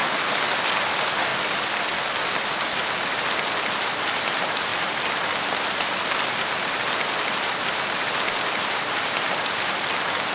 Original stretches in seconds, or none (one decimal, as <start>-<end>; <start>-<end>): 0.9-4.7; 9.9-10.3